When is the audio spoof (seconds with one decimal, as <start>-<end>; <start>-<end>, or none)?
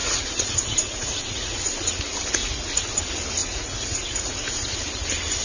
0.0-1.9; 2.4-3.0; 3.4-4.8